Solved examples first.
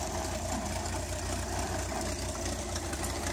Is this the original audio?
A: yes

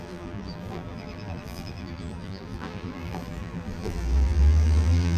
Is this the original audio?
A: no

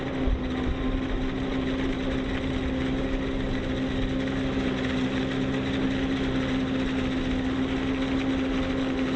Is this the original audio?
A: yes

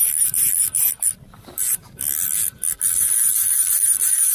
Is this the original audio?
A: no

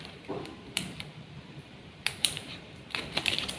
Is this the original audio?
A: no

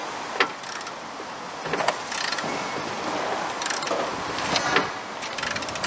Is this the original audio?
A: yes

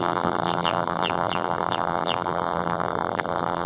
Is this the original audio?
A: no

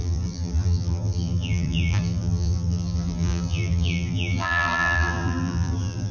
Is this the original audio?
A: no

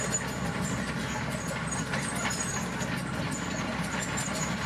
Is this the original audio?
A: yes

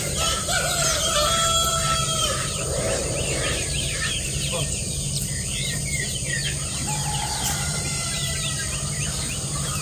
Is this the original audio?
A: no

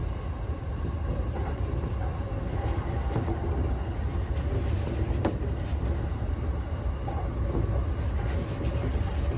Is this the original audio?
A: yes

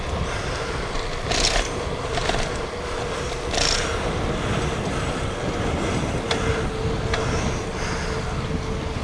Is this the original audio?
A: yes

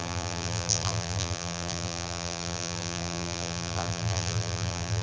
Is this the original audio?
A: no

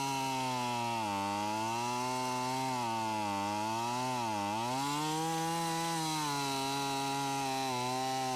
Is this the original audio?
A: yes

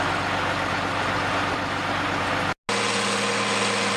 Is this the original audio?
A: yes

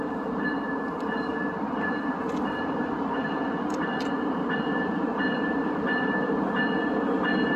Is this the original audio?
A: yes